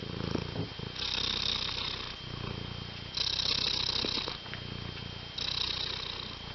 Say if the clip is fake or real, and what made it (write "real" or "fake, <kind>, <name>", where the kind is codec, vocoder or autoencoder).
real